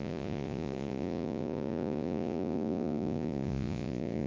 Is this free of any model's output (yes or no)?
no